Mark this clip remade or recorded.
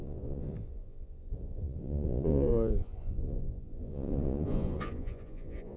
remade